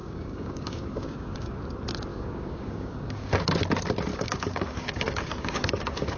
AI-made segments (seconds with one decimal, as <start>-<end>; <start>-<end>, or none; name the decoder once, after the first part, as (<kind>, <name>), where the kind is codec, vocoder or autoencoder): 0.0-1.5 (codec, DAC); 2.1-3.3; 4.1-6.2